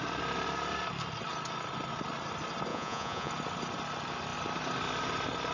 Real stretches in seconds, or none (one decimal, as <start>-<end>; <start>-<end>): 0.0-2.7; 3.3-5.5